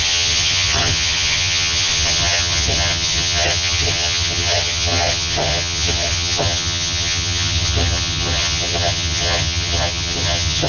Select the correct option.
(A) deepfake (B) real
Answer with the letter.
A